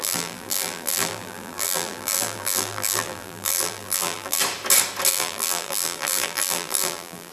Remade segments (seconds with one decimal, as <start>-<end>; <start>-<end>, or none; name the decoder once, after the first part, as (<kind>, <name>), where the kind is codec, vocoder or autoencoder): 0.0-4.4 (vocoder, BigVGAN v2); 5.1-7.3